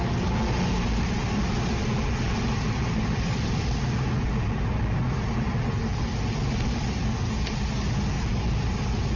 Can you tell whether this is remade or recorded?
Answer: recorded